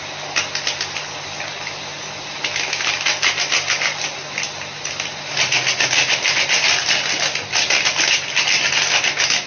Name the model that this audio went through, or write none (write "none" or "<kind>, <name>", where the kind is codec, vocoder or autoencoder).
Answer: none